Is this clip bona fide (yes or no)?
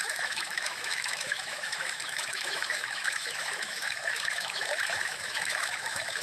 no